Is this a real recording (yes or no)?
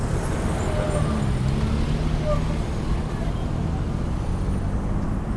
yes